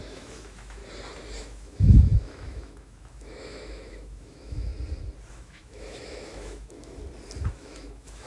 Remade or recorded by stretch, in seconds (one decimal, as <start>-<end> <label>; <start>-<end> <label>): 0.0-0.8 remade; 0.8-1.4 recorded; 1.4-4.7 remade; 4.7-5.3 recorded; 5.3-7.0 remade; 7.0-7.5 recorded; 7.5-8.3 remade